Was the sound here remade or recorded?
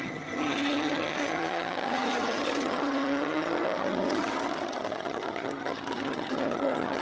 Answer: remade